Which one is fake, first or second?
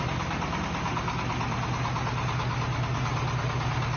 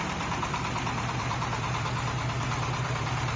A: second